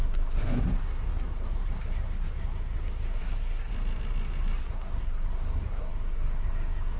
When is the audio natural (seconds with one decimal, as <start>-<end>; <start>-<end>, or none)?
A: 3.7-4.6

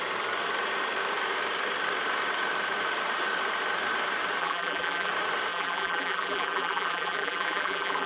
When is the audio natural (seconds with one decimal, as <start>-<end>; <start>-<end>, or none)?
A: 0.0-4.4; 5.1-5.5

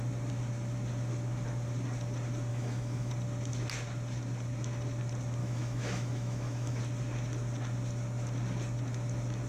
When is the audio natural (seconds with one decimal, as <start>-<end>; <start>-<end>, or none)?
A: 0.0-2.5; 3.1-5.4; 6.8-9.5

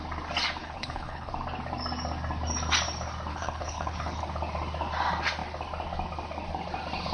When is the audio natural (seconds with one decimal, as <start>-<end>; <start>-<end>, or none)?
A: 0.0-0.6; 1.3-3.3; 4.2-7.1